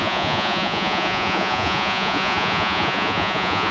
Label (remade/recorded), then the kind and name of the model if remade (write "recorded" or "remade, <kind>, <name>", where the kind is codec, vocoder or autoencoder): remade, vocoder, Vocos